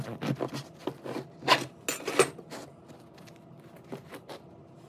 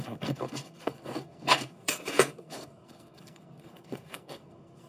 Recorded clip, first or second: first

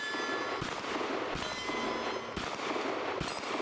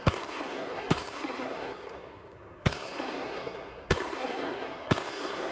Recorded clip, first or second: first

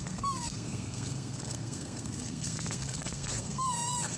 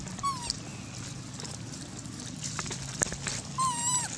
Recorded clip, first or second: second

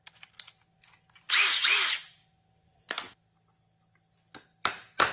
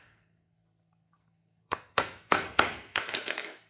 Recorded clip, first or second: first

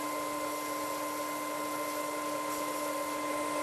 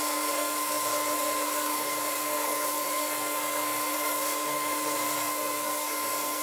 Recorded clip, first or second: first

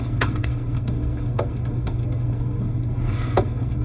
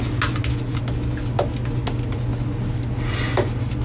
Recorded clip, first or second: second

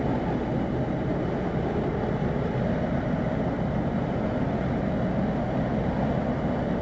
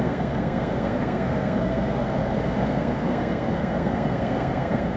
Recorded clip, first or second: first